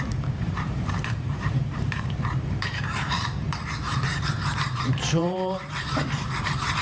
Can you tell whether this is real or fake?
fake